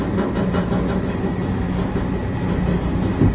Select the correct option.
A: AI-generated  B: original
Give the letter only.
B